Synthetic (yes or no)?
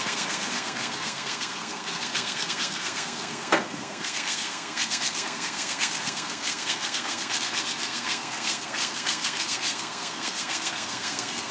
yes